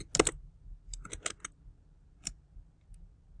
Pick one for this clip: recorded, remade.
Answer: recorded